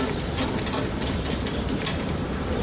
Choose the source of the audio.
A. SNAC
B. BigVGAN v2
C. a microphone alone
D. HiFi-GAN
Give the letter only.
C